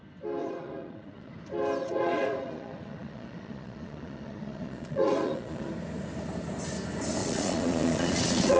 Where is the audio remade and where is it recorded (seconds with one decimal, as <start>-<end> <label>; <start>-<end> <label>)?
0.0-0.4 recorded; 0.4-1.3 remade; 1.3-1.8 recorded; 1.8-5.7 remade; 5.7-7.2 recorded; 7.2-8.6 remade